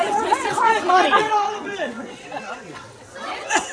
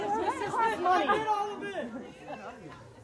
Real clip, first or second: second